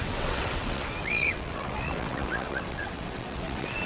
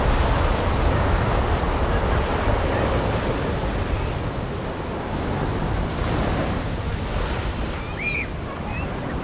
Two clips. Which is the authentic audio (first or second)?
second